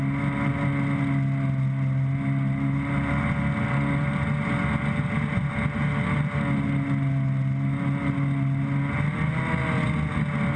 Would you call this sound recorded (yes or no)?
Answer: yes